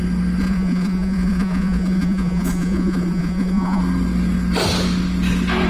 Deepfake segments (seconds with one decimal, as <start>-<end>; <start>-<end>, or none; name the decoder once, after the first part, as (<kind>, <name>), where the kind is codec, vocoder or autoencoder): 0.4-3.8 (vocoder, Vocos)